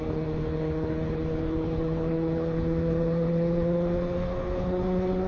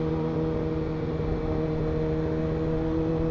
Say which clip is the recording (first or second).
second